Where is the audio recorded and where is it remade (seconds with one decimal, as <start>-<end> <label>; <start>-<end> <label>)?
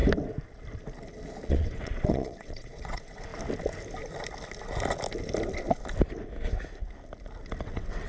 0.0-1.5 recorded; 1.5-3.3 remade; 3.3-7.6 recorded; 7.6-8.1 remade